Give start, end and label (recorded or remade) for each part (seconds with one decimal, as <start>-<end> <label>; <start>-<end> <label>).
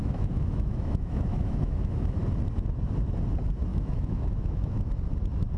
0.0-2.2 remade; 2.2-3.7 recorded; 3.7-4.9 remade; 4.9-5.6 recorded